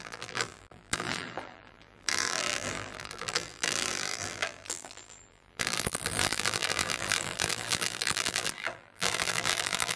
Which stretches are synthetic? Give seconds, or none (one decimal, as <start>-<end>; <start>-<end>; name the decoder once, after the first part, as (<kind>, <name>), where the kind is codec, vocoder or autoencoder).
0.0-10.0 (vocoder, BigVGAN v2)